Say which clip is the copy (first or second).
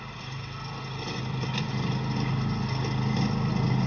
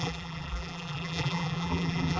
second